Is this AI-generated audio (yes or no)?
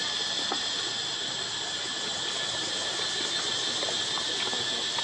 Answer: no